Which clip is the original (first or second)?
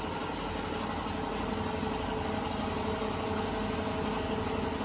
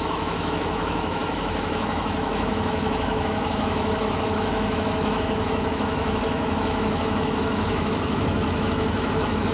first